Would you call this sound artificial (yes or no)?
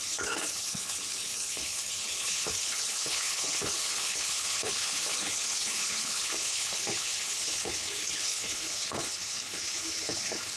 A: yes